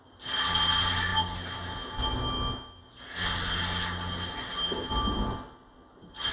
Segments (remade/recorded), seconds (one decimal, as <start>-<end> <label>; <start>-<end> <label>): 0.0-6.3 recorded